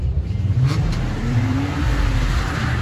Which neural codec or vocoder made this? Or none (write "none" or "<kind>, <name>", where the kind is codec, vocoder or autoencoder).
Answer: vocoder, BigVGAN v2